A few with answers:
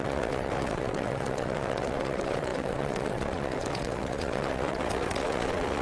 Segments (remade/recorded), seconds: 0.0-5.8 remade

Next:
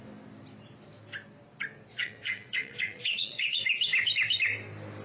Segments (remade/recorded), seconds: 0.0-1.9 recorded; 1.9-3.6 remade; 3.6-5.0 recorded

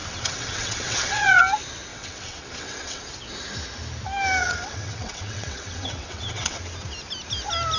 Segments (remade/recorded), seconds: 0.0-1.4 remade; 1.4-1.9 recorded; 1.9-3.0 remade; 3.0-4.4 recorded; 4.4-6.6 remade; 6.6-7.8 recorded

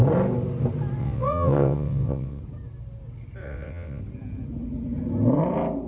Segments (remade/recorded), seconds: 0.0-1.0 recorded; 1.0-2.4 remade; 2.4-3.4 recorded; 3.4-4.0 remade; 4.0-5.9 recorded

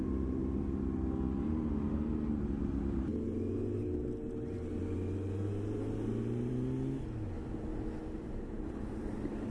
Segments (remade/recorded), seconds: 0.0-9.5 recorded

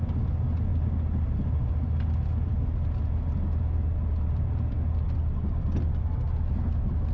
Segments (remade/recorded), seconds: 0.0-7.1 recorded

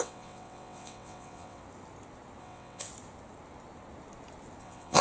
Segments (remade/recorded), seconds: 0.0-1.6 remade; 1.6-2.4 recorded; 2.4-2.9 remade; 2.9-4.6 recorded; 4.6-5.0 remade